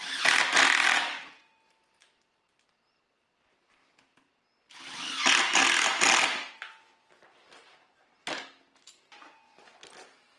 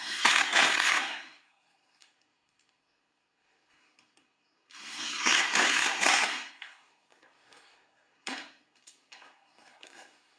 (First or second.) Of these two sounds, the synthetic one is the second